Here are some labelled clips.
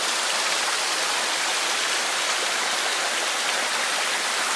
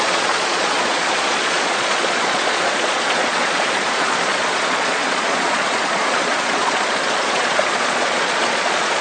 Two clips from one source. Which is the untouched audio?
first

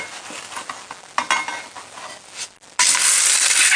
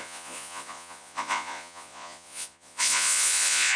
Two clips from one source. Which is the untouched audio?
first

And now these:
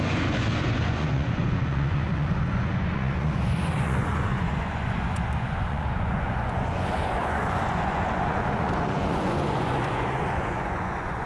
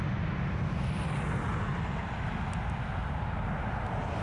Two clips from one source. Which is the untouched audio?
second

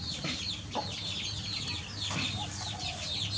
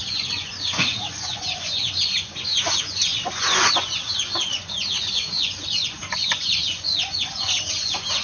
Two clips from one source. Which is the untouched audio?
first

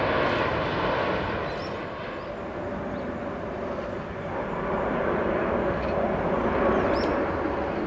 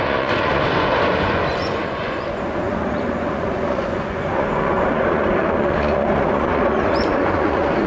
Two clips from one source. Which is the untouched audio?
first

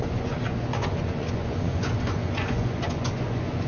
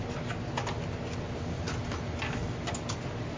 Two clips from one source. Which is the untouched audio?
second